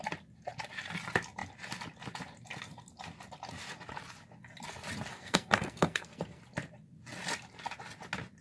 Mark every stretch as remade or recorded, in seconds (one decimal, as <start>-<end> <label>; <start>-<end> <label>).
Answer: 0.0-5.1 recorded; 5.1-6.4 remade; 6.4-8.4 recorded